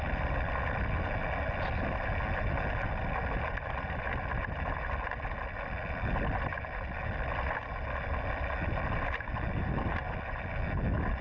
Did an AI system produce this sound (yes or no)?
no